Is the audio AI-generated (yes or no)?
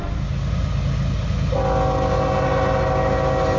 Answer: no